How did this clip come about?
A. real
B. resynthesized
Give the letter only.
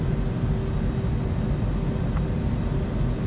A